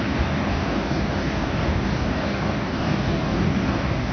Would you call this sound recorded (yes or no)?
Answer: no